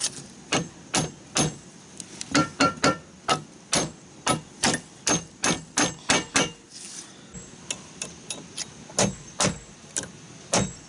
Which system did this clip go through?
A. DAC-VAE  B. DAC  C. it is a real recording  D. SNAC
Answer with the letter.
C